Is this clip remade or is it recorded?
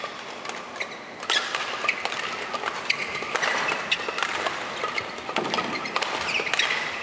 recorded